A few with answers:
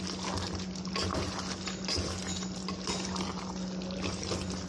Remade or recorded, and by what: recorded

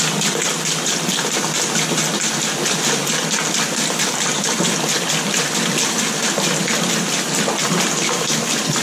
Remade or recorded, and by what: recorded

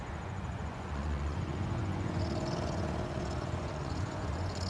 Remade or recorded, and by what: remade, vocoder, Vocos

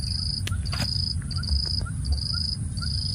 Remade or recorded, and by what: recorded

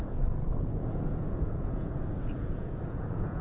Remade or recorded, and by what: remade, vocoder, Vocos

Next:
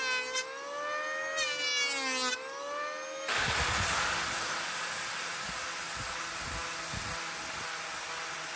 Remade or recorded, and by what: recorded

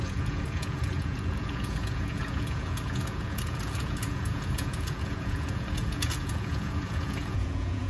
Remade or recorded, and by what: remade, vocoder, Vocos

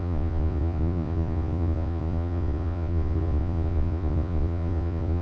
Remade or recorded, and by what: remade, vocoder, Vocos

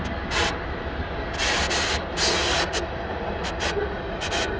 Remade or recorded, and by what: recorded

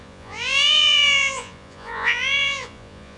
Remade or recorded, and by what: remade, vocoder, Vocos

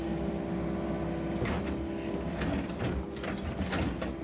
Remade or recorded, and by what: recorded